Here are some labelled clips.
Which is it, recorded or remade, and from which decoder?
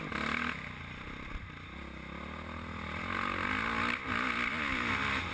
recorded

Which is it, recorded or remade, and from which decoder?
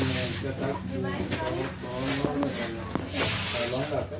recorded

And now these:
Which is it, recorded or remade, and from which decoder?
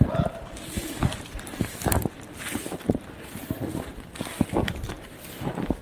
recorded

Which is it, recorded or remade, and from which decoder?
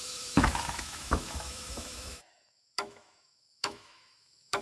remade, autoencoder, DAC-VAE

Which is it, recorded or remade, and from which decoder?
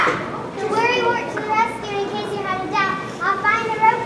recorded